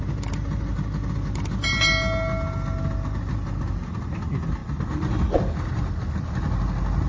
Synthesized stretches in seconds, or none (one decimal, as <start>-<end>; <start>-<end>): none